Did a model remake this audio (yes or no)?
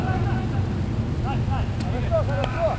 no